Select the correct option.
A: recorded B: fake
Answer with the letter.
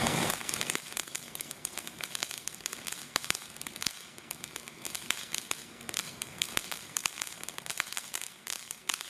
B